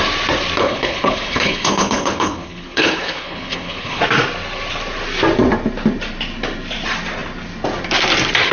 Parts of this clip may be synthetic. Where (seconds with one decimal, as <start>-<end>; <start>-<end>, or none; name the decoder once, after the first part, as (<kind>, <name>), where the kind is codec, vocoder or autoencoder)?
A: 0.6-4.0 (codec, HILCodec)